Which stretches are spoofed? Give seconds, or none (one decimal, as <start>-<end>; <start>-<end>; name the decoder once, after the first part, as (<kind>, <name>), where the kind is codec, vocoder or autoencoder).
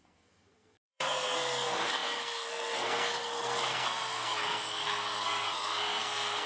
0.0-6.5 (codec, SNAC)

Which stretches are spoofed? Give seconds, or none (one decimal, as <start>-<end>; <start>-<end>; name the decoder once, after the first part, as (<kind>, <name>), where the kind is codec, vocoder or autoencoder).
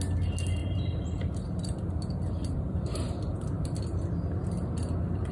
0.6-3.8 (vocoder, BigVGAN v2)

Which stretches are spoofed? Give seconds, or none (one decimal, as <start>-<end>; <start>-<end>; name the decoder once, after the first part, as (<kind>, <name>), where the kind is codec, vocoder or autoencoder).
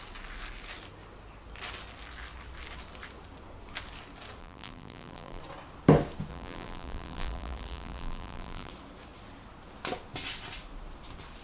4.4-5.4 (vocoder, BigVGAN v2); 6.3-8.7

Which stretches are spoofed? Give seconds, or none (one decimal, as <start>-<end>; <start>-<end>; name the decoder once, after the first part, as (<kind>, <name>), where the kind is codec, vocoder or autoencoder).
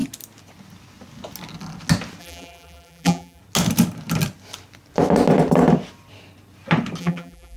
2.2-3.4 (vocoder, BigVGAN v2); 7.0-7.6